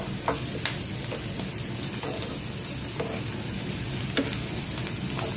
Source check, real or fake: real